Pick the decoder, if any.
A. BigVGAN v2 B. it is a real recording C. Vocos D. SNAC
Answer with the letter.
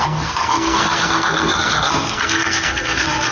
D